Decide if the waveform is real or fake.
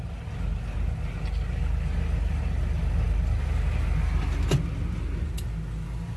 real